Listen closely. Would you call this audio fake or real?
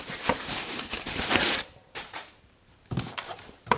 fake